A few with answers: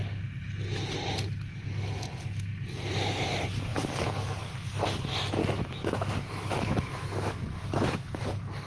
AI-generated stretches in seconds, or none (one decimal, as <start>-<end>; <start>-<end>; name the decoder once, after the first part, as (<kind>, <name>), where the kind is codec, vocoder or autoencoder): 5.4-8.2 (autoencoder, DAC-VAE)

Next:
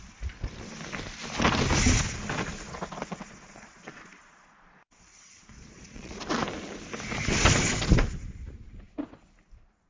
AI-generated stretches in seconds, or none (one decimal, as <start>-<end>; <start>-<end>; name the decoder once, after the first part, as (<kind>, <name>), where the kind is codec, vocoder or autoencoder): 3.0-6.2 (vocoder, Vocos)

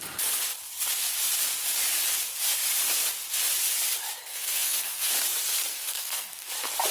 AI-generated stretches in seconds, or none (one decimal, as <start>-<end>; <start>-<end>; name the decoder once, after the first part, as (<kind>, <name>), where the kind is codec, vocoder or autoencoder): 4.3-5.1 (codec, SNAC); 5.7-6.5

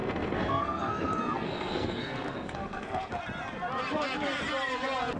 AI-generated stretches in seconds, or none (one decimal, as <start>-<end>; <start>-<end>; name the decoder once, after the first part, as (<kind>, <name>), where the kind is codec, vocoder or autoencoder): 0.0-3.1 (codec, SNAC)

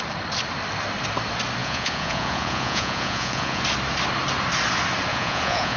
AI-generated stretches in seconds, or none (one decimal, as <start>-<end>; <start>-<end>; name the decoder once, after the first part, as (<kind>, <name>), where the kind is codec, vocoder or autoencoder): 1.6-3.6 (vocoder, Vocos); 5.1-5.8

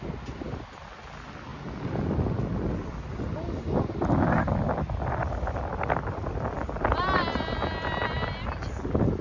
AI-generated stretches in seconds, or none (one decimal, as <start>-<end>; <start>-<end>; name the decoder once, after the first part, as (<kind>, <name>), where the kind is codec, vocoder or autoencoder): none

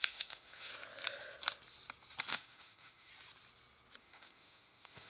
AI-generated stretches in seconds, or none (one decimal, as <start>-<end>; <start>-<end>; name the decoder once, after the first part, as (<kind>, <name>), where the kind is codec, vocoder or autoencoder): 0.0-0.7 (autoencoder, DAC-VAE); 2.3-3.1; 4.0-5.1

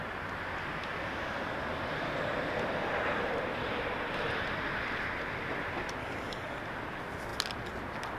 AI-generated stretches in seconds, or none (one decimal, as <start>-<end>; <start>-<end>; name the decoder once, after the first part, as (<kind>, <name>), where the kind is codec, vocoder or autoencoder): 6.0-6.6 (codec, DAC)